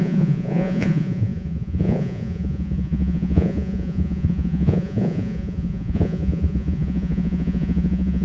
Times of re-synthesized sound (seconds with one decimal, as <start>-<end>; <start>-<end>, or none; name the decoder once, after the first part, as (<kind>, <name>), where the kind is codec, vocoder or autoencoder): 0.0-8.2 (vocoder, Vocos)